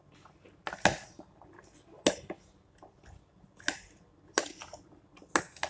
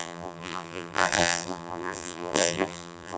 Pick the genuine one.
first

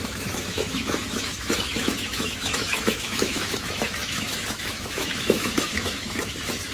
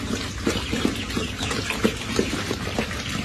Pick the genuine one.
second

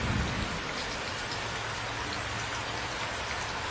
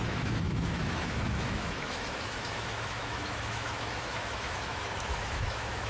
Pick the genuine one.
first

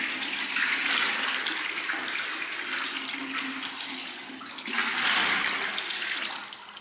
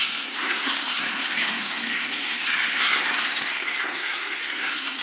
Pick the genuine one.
first